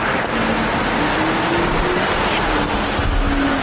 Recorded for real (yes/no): yes